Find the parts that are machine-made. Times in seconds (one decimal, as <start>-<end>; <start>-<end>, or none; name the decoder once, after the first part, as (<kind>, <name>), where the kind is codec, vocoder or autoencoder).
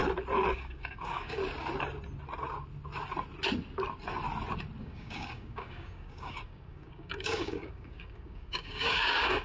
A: 0.5-1.4 (codec, DAC); 4.8-9.4